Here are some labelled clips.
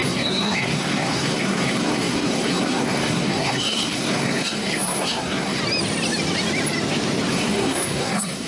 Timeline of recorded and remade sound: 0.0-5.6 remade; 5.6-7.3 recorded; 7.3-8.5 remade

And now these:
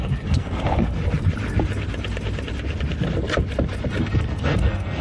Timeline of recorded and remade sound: 0.0-1.0 remade; 1.0-4.0 recorded; 4.0-5.0 remade

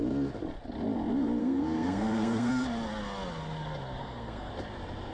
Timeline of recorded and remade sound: 0.0-1.4 recorded; 1.4-2.5 remade; 2.5-4.0 recorded; 4.0-4.5 remade; 4.5-5.1 recorded

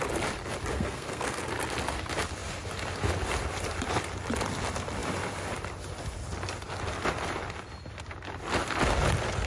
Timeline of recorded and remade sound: 0.0-0.7 recorded; 0.7-1.4 remade; 1.4-9.5 recorded

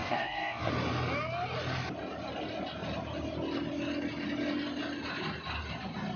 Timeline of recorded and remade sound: 0.0-0.7 remade; 0.7-6.2 recorded

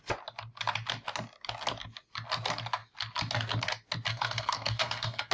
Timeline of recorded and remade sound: 0.0-4.1 recorded; 4.1-5.3 remade

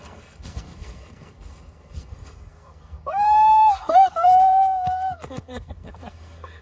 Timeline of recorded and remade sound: 0.0-6.6 remade

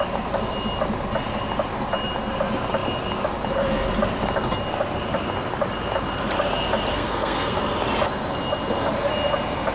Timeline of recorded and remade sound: 0.0-6.9 recorded; 6.9-7.6 remade; 7.6-9.7 recorded